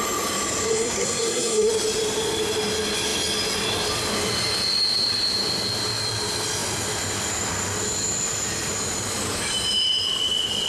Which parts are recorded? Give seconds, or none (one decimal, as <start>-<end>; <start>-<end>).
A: 0.0-0.7; 1.7-10.7